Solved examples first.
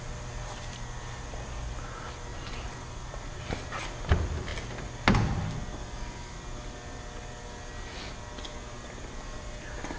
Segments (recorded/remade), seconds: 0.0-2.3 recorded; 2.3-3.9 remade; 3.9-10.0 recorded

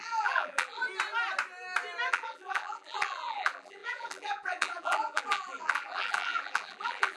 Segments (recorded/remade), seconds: 0.0-0.8 remade; 0.8-2.1 recorded; 2.1-7.2 remade

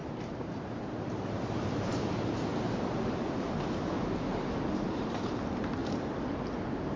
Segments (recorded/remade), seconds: 0.0-2.5 remade; 2.5-4.9 recorded; 4.9-5.8 remade; 5.8-6.6 recorded; 6.6-7.0 remade

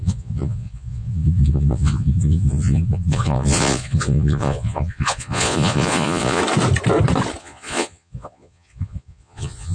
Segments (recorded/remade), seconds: 0.0-6.4 remade; 6.4-7.4 recorded; 7.4-9.7 remade

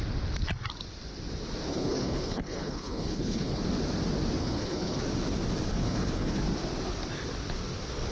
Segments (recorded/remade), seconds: 0.0-1.7 recorded; 1.7-3.6 remade; 3.6-4.4 recorded; 4.4-5.0 remade; 5.0-5.7 recorded; 5.7-6.4 remade; 6.4-8.1 recorded

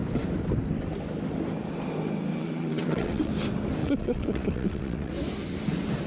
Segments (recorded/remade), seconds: 0.0-2.3 recorded; 2.3-3.3 remade; 3.3-3.8 recorded; 3.8-5.1 remade; 5.1-6.1 recorded

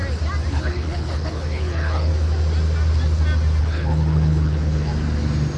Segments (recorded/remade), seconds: 0.0-0.5 recorded; 0.5-2.1 remade; 2.1-3.6 recorded; 3.6-4.9 remade; 4.9-5.6 recorded